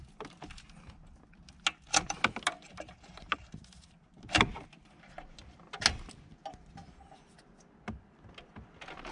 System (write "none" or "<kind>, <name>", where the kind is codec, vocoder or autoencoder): none